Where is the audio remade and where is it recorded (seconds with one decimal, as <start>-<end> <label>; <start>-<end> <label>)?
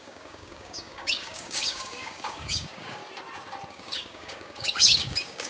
0.0-3.0 remade; 3.0-3.7 recorded; 3.7-5.5 remade